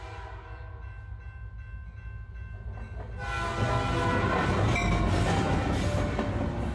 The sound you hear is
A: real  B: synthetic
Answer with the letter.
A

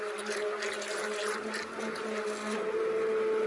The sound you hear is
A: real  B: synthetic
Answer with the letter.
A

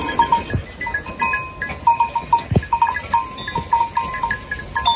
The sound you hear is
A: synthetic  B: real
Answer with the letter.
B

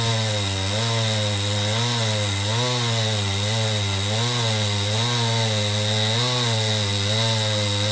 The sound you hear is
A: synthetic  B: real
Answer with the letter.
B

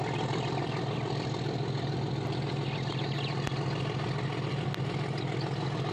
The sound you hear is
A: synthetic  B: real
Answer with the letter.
B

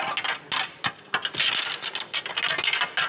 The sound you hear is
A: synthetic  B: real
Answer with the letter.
B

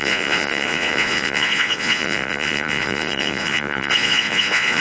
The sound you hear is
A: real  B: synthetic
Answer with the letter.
B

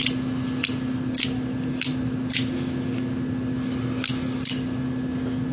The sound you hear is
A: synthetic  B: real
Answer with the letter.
B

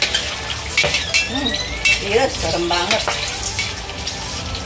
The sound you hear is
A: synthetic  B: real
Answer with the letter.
B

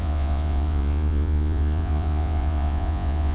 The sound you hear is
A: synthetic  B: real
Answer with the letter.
A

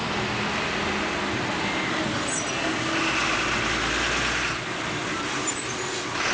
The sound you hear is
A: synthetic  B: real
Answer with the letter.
B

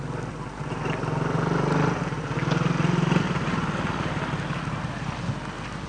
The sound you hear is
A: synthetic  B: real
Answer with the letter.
B